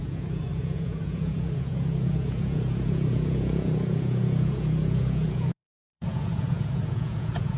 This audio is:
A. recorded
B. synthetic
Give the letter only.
B